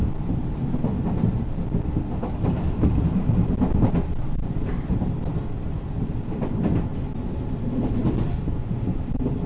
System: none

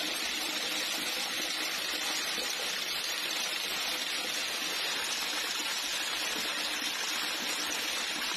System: none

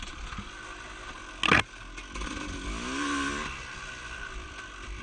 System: none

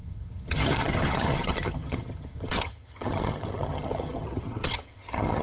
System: vocoder, HiFi-GAN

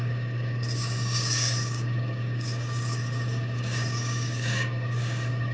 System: codec, DAC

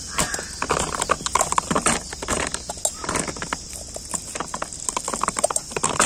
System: none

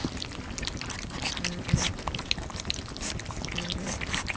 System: none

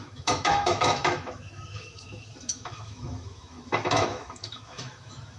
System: autoencoder, DAC-VAE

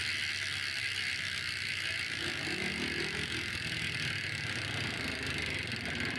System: none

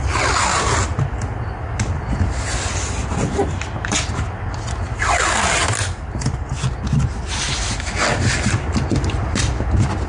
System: none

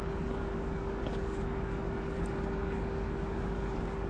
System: codec, DAC